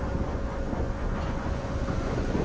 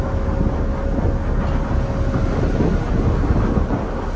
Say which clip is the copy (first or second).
first